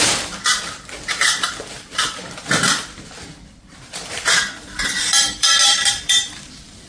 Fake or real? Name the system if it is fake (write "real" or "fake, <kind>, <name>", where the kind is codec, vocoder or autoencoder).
fake, vocoder, BigVGAN v2